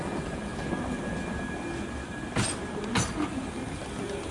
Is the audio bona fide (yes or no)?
yes